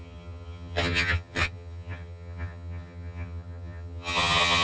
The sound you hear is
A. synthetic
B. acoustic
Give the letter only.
A